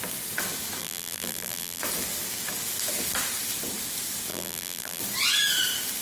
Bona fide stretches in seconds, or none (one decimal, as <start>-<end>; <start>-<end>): 0.0-0.8; 1.8-4.3; 5.0-6.0